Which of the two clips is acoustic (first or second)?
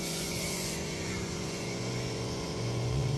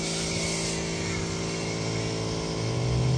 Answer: second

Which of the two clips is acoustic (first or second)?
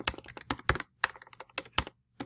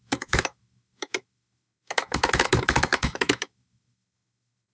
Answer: first